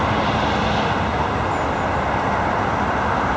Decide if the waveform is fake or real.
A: real